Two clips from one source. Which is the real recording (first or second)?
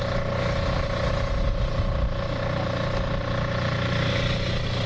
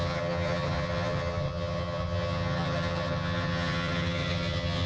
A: first